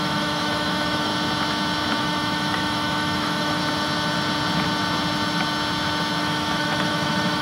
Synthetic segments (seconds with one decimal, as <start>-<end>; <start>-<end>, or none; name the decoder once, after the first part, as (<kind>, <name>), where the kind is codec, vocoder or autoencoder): 0.0-1.1 (autoencoder, DAC-VAE); 2.0-3.6; 6.2-7.4